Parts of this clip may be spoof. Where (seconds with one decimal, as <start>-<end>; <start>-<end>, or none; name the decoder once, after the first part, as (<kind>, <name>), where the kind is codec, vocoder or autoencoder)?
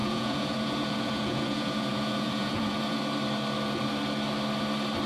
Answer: 0.0-3.0 (vocoder, Vocos)